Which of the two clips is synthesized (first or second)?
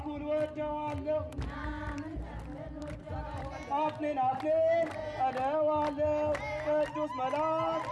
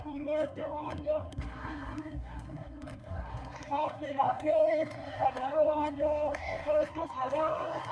second